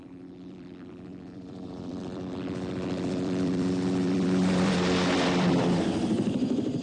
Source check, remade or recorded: remade